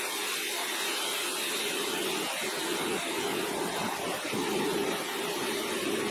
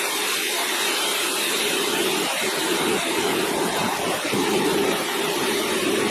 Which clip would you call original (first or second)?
first